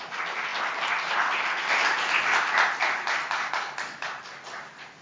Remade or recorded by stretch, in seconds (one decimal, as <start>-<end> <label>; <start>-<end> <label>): 0.0-5.0 recorded